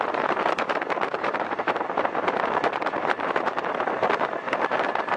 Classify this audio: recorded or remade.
remade